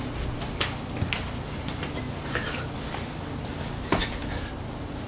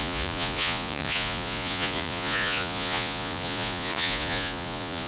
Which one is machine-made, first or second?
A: second